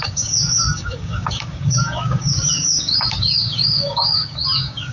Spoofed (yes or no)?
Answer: yes